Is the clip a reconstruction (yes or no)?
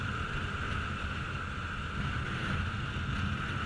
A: no